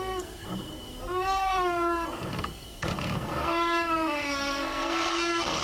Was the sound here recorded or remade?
remade